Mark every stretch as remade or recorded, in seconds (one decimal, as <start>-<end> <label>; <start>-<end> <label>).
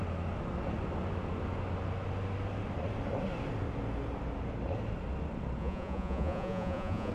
0.0-5.6 recorded; 5.6-7.1 remade